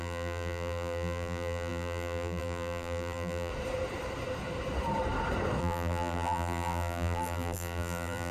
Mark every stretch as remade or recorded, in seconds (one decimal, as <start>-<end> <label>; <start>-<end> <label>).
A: 0.0-3.5 remade; 3.5-5.6 recorded; 5.6-8.3 remade